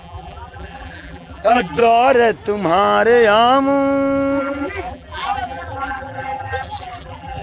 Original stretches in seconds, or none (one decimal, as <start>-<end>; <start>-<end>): 1.8-4.4